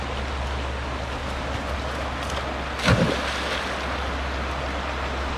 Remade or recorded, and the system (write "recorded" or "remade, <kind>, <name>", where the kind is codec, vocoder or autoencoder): recorded